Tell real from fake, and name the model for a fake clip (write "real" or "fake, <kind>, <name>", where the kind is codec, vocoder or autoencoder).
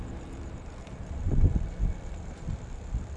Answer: fake, vocoder, BigVGAN v2